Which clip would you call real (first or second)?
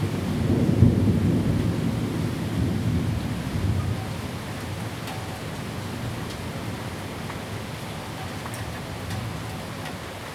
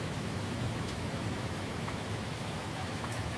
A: first